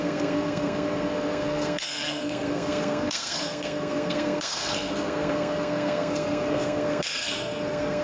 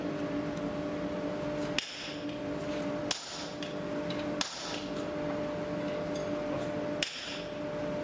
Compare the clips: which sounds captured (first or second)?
second